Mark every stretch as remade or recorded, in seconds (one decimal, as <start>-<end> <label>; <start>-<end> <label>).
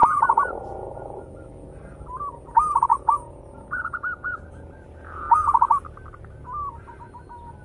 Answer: 0.0-1.3 remade; 1.3-2.9 recorded; 2.9-4.4 remade; 4.4-5.0 recorded; 5.0-5.7 remade; 5.7-7.6 recorded